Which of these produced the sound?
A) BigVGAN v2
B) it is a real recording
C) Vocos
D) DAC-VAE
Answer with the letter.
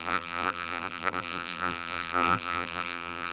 A